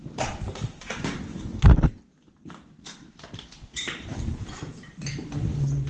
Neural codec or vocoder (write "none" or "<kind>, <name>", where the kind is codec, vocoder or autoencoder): none